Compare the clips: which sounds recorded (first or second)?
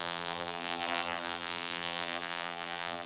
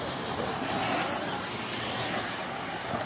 second